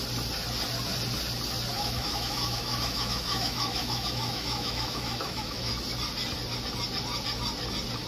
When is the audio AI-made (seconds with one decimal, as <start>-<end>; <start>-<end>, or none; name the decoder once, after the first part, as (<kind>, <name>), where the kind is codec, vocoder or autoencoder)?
1.7-5.7 (autoencoder, DAC-VAE)